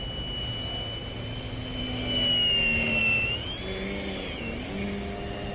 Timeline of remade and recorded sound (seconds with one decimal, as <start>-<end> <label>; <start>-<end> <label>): 0.0-5.5 recorded